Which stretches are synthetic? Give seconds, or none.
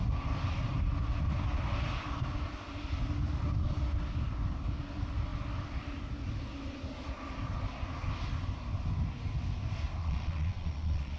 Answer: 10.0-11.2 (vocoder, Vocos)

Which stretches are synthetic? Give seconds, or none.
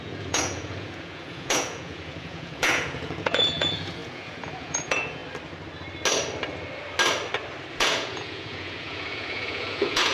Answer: 0.0-5.2 (vocoder, Vocos); 7.7-10.1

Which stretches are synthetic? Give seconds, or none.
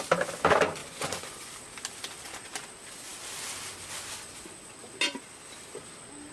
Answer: 0.8-1.5 (vocoder, Vocos)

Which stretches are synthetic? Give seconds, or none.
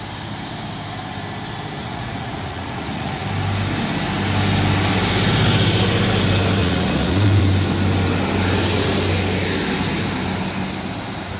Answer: 1.8-3.2 (vocoder, Vocos); 6.6-7.4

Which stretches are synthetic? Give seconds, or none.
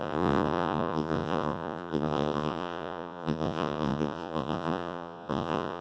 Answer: 0.0-5.8 (vocoder, Vocos)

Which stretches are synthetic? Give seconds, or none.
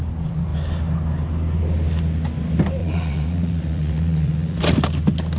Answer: 2.8-4.6 (vocoder, Vocos)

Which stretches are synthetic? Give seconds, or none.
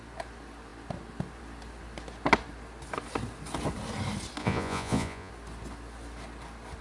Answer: 4.4-5.3 (vocoder, Vocos)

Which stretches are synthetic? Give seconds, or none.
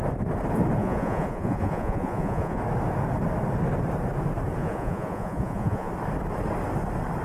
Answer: 0.8-2.6 (vocoder, Vocos); 4.6-5.9